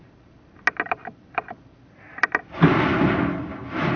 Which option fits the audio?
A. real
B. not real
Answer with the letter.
A